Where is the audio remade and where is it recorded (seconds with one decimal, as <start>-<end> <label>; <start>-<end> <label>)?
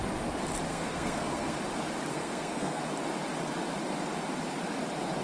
0.0-0.7 recorded; 0.7-1.6 remade; 1.6-2.1 recorded; 2.1-2.8 remade; 2.8-5.2 recorded